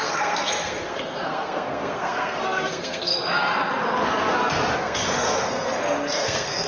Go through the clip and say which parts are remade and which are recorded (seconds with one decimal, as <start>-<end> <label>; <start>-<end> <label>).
0.0-3.1 remade; 3.1-4.8 recorded; 4.8-6.7 remade